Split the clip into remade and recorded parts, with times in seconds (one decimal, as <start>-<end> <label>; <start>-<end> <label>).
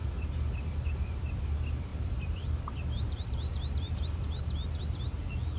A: 0.0-1.9 recorded; 1.9-4.8 remade; 4.8-5.6 recorded